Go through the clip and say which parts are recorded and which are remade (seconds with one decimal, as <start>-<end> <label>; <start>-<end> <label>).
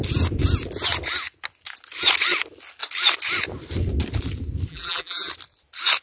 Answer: 0.0-4.7 recorded; 4.7-5.3 remade; 5.3-6.0 recorded